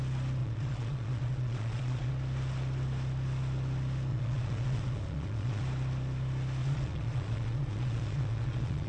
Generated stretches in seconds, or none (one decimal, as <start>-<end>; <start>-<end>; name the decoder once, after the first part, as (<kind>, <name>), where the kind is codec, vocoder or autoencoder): 0.4-2.1 (vocoder, Vocos); 4.1-5.6; 6.6-8.9